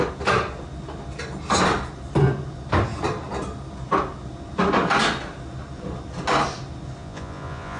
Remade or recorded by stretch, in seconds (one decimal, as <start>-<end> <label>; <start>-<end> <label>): 0.0-7.0 recorded; 7.0-7.8 remade